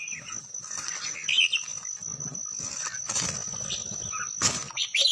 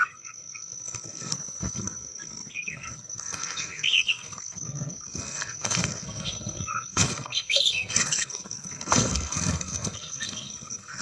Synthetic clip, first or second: second